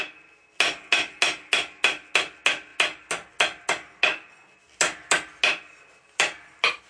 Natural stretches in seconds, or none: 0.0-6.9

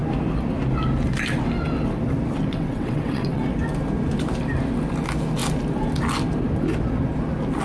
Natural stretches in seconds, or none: 0.0-2.5; 3.4-7.6

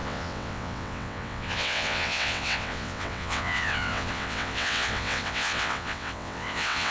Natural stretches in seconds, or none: none